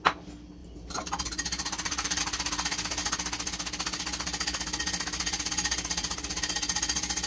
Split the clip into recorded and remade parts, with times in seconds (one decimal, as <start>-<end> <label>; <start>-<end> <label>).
0.0-0.6 recorded; 0.6-2.2 remade; 2.2-7.3 recorded

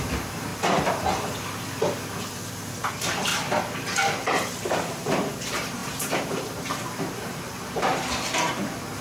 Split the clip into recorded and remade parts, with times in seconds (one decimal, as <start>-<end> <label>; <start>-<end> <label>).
0.0-0.5 remade; 0.5-2.8 recorded; 2.8-3.3 remade; 3.3-4.6 recorded; 4.6-7.9 remade; 7.9-8.5 recorded; 8.5-9.0 remade

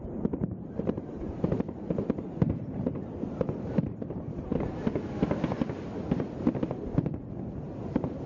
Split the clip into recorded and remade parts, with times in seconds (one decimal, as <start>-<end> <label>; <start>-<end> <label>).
0.0-4.5 remade; 4.5-7.6 recorded; 7.6-8.3 remade

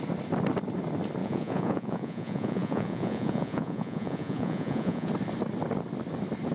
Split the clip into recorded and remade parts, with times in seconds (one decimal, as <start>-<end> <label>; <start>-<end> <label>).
0.0-1.2 recorded; 1.2-5.1 remade; 5.1-6.5 recorded